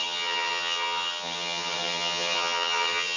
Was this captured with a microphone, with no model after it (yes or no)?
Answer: no